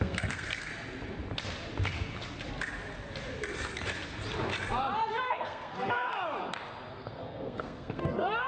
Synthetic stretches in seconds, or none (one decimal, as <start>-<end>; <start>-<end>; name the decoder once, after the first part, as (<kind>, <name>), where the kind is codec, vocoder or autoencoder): 0.0-0.7 (codec, SNAC); 5.1-6.1; 6.9-8.5